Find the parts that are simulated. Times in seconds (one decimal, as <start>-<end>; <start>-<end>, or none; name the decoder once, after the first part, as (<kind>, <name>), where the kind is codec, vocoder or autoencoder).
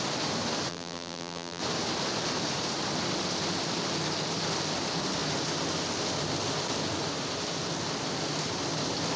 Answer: 0.7-1.6 (vocoder, BigVGAN v2)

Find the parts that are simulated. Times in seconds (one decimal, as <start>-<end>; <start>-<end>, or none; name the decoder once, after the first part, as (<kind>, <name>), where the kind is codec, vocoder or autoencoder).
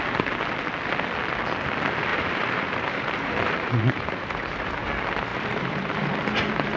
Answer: 2.1-4.7 (vocoder, BigVGAN v2); 5.3-6.3